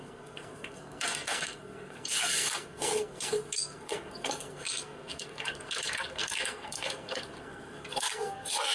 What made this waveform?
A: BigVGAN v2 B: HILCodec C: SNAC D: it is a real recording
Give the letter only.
C